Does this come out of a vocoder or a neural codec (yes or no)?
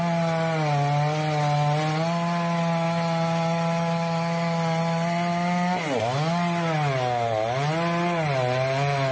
no